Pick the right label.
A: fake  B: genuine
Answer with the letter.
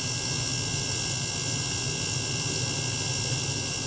B